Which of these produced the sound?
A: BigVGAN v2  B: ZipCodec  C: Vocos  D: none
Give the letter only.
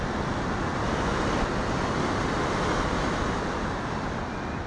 D